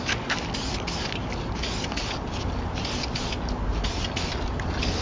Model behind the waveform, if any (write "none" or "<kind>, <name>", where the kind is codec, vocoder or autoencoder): none